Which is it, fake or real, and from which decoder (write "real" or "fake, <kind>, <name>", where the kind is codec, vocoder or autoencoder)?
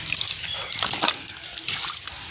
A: real